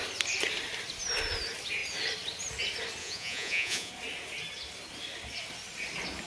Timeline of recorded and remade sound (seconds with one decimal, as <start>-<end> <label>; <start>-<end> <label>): 0.0-3.0 recorded; 3.0-3.9 remade; 3.9-6.3 recorded